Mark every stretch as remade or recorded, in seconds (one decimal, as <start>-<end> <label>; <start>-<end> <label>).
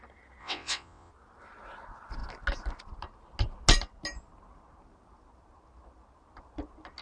0.0-0.4 recorded; 0.4-1.1 remade; 1.1-7.0 recorded